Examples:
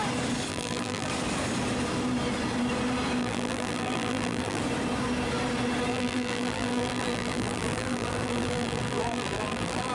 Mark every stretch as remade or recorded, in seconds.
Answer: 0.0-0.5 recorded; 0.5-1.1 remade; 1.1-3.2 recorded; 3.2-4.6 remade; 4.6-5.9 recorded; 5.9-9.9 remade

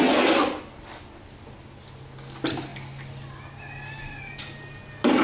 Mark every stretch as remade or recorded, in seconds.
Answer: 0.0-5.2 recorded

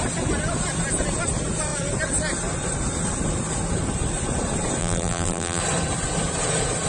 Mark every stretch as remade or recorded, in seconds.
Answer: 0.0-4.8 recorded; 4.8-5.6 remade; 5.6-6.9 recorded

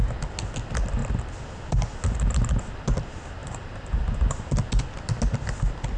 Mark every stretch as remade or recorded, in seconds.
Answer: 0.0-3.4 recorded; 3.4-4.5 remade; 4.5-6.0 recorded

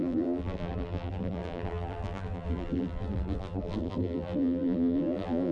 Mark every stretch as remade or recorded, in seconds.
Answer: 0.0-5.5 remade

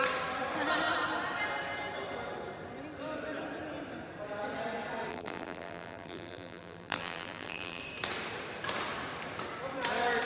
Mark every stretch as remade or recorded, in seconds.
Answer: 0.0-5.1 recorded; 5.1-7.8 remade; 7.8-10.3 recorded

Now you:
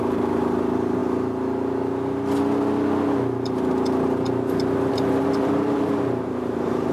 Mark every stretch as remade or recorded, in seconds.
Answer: 0.0-1.0 remade; 1.0-4.9 recorded; 4.9-6.9 remade

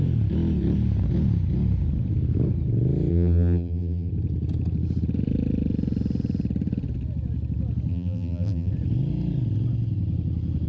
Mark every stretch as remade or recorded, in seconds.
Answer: 0.0-3.1 recorded; 3.1-4.1 remade; 4.1-7.9 recorded; 7.9-8.7 remade; 8.7-10.7 recorded